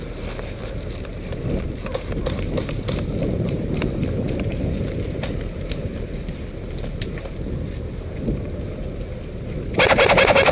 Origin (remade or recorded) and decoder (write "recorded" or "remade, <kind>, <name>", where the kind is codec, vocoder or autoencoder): remade, vocoder, BigVGAN v2